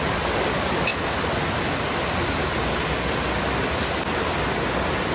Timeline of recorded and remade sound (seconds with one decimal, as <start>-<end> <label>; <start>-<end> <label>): 0.0-5.1 recorded